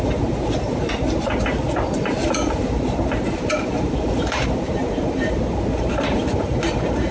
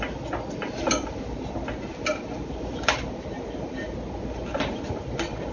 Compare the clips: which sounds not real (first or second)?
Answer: first